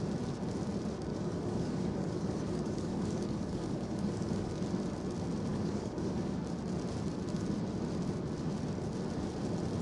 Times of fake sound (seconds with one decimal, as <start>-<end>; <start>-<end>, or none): 1.1-4.5; 5.5-6.4